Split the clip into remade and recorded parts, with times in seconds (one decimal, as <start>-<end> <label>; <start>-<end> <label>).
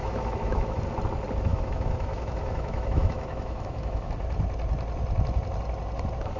0.0-0.8 remade; 0.8-1.5 recorded; 1.5-4.1 remade; 4.1-6.4 recorded